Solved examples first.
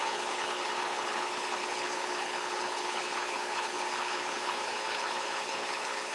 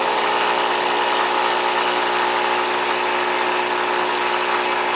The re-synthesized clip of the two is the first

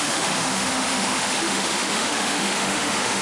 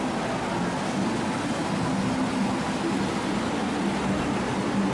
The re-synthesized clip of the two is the first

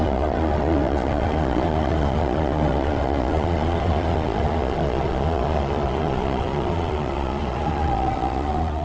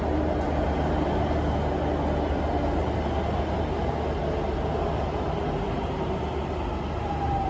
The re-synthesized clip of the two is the first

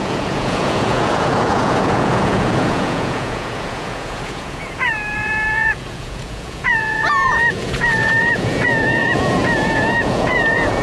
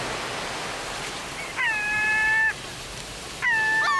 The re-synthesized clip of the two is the first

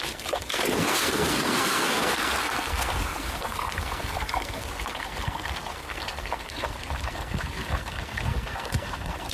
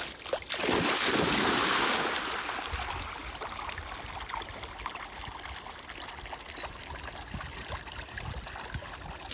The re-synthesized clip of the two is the first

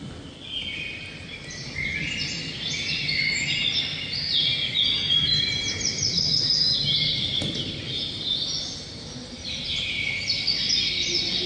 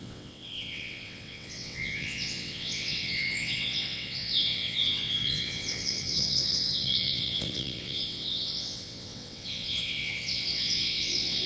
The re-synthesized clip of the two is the second